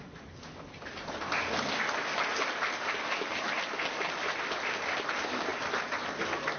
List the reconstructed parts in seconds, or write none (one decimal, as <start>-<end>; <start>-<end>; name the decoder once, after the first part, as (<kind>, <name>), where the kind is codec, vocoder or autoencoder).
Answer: none